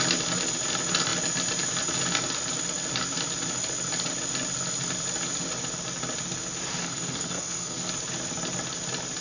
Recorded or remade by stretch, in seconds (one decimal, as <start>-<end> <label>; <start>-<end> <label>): 0.0-6.8 recorded; 6.8-7.8 remade; 7.8-9.2 recorded